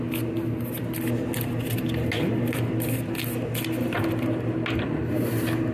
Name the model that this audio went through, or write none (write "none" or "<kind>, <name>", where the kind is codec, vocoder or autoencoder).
none